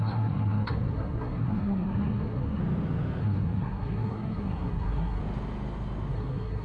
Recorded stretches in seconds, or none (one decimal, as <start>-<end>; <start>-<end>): 2.6-3.2; 5.2-6.1

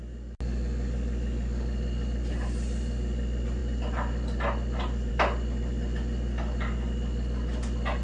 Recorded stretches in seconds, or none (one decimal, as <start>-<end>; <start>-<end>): 0.0-8.0